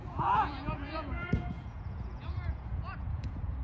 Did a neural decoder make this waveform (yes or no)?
yes